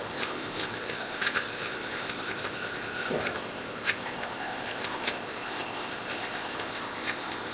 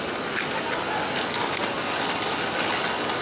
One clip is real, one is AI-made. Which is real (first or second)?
second